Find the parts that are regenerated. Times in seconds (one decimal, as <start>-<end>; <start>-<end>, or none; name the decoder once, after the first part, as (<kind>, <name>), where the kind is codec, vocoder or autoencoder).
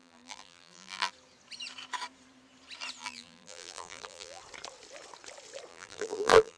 0.0-1.1 (vocoder, BigVGAN v2); 3.0-4.4; 5.7-6.6